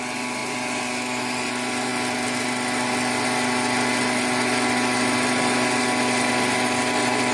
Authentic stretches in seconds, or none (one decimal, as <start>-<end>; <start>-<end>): 0.0-7.3